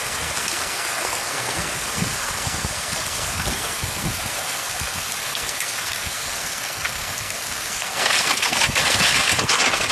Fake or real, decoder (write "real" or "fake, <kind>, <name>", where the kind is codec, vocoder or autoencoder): fake, codec, SNAC